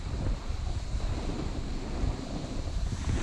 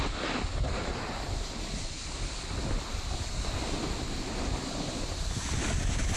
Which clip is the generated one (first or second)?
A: first